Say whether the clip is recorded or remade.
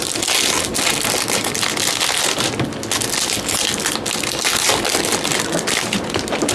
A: recorded